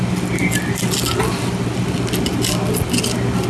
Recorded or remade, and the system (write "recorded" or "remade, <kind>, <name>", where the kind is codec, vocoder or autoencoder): recorded